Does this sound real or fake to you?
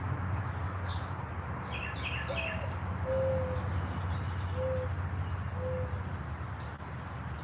real